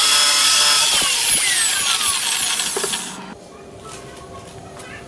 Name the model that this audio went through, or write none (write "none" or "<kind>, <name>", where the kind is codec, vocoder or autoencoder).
none